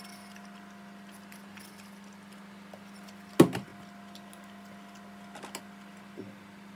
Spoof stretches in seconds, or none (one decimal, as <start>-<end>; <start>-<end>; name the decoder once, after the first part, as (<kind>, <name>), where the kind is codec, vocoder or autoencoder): none